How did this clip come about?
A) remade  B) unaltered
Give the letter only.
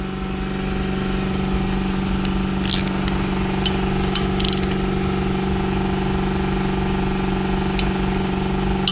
B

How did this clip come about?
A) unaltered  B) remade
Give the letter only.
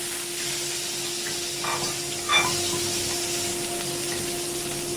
A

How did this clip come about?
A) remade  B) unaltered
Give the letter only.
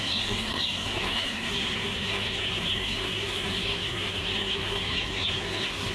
A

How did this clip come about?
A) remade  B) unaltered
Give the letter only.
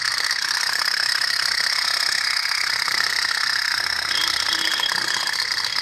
A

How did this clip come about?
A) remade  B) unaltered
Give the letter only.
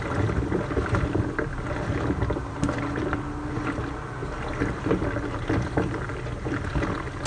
B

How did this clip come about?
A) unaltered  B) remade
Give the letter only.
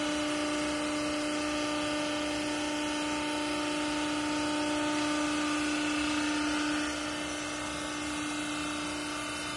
A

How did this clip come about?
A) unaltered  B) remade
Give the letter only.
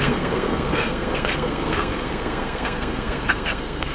B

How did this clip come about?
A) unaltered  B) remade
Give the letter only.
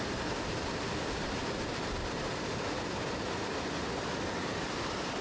A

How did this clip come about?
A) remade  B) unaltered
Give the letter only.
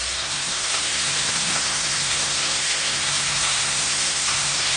A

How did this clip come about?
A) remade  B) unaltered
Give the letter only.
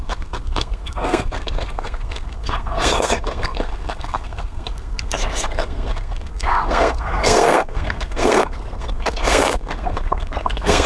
A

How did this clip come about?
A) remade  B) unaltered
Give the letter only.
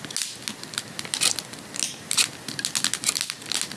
B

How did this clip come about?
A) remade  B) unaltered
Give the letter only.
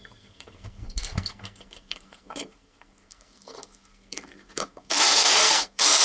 A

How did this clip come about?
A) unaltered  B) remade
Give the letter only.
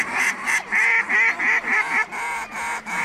A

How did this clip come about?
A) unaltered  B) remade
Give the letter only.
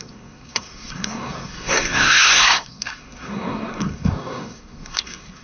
B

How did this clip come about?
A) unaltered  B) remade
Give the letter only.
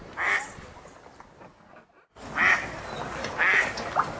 A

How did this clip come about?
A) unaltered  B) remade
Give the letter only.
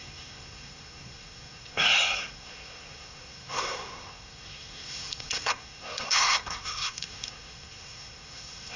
B